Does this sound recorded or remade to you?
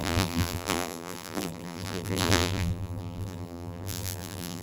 remade